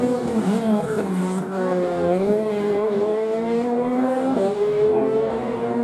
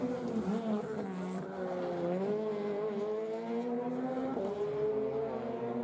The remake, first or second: first